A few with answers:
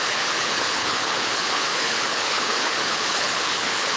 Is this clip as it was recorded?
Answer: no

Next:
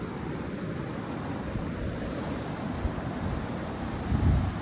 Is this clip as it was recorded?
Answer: yes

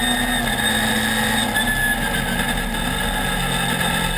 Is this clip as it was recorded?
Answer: yes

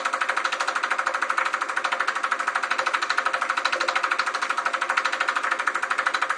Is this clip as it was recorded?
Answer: yes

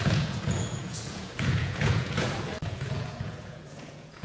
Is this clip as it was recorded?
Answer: no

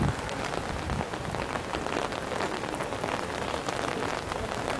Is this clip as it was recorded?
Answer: yes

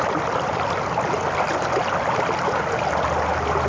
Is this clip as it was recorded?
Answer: yes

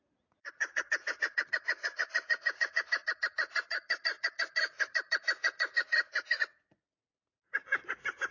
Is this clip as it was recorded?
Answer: no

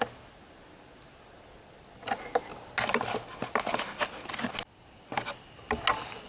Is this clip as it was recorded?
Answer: yes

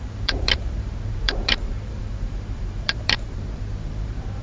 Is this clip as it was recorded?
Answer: no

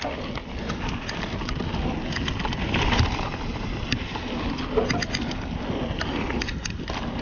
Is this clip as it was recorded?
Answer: yes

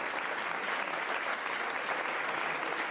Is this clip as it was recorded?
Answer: yes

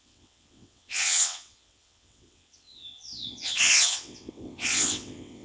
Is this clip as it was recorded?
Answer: no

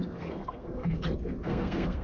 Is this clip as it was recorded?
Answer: no